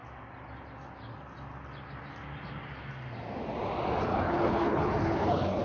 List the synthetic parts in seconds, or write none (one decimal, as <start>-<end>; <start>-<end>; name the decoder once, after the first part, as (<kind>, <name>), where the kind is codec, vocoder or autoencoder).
4.1-5.6 (codec, HILCodec)